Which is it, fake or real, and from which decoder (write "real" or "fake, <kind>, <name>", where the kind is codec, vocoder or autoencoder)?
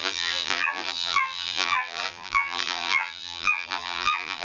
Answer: fake, vocoder, BigVGAN v2